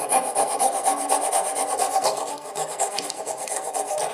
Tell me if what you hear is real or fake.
fake